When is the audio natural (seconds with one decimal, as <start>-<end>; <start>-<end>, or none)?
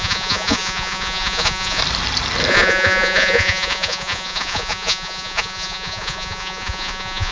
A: 1.8-2.5